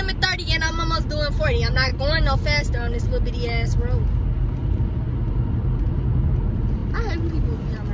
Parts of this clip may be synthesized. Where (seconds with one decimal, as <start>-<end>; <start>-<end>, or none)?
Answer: none

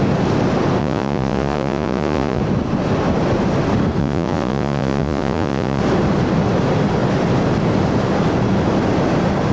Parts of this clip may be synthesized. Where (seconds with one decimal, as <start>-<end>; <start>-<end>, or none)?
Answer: 0.8-2.4; 4.0-5.8

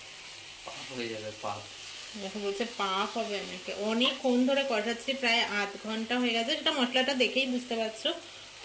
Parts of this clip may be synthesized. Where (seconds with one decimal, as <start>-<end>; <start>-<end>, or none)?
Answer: 2.0-4.2

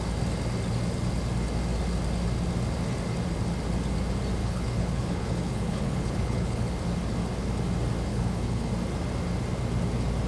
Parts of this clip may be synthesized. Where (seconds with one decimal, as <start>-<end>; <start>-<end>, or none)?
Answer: 4.4-6.7; 8.1-8.7

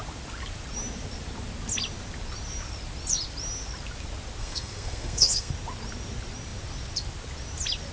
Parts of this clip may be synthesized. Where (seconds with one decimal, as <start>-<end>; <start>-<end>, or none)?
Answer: 4.4-5.5

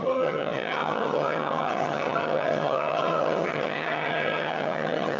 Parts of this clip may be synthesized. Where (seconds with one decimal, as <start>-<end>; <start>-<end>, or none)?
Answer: 0.0-5.2